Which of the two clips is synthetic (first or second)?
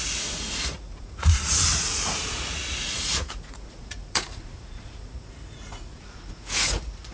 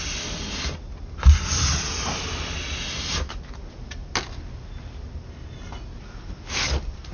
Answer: first